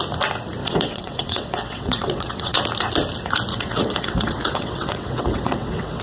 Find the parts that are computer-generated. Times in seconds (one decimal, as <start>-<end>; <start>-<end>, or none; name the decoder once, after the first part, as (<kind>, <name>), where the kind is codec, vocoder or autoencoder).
0.6-2.6 (vocoder, WaveNeXt); 3.5-6.0